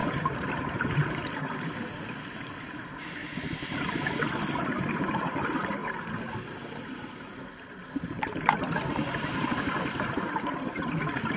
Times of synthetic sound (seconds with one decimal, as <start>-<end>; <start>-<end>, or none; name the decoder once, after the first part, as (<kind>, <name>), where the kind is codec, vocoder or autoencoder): 0.0-1.2 (vocoder, BigVGAN v2); 2.3-3.2; 4.6-11.4

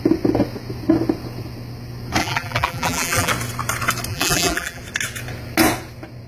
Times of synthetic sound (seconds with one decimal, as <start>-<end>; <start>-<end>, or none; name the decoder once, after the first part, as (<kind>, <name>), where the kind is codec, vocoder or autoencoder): 2.2-3.3 (vocoder, BigVGAN v2); 4.1-4.8

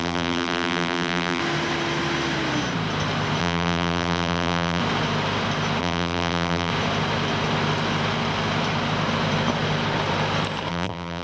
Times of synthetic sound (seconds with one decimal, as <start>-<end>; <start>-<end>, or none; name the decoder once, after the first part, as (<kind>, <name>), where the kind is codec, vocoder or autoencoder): 0.0-1.4 (vocoder, BigVGAN v2); 3.4-4.8; 5.8-6.7; 10.7-11.2

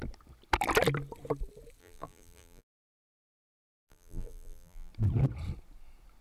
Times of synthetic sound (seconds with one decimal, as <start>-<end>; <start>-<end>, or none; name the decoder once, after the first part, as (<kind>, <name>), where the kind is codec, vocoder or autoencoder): 1.8-4.9 (vocoder, BigVGAN v2)